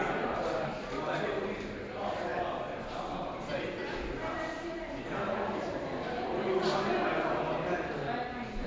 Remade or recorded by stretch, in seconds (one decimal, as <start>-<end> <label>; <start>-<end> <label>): 0.0-8.7 recorded